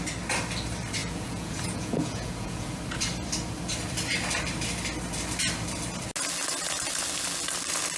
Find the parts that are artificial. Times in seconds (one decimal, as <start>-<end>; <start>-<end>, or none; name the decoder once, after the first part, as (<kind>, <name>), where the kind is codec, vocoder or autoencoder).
1.0-2.7 (vocoder, Vocos)

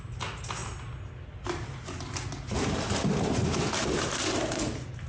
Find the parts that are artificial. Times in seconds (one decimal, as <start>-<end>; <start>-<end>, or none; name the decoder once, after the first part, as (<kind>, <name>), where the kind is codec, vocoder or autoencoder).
none

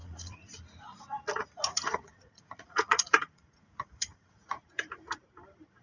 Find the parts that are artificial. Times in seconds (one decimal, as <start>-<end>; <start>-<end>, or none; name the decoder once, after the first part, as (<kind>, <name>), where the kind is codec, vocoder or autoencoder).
0.0-1.2 (vocoder, Vocos); 1.7-5.2

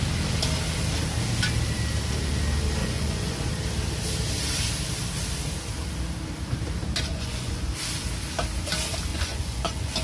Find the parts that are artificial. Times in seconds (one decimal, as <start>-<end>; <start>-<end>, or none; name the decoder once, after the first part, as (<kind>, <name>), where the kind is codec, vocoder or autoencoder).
2.8-3.5 (vocoder, Vocos); 7.1-7.7; 9.1-10.0

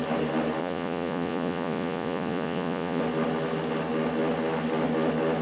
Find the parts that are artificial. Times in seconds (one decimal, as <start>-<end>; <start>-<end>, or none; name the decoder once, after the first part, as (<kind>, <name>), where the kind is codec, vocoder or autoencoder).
0.6-3.0 (vocoder, Vocos)

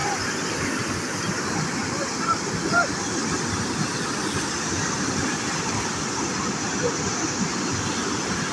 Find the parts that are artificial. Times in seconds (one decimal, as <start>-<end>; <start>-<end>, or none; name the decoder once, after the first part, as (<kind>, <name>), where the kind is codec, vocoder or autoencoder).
none